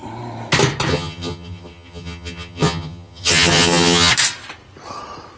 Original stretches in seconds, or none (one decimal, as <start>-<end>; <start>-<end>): 0.0-0.9; 4.1-5.4